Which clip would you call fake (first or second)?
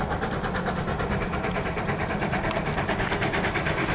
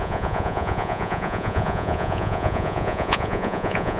second